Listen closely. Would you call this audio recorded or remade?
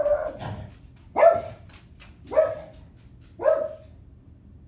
recorded